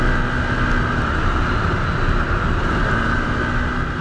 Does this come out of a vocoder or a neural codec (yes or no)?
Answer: no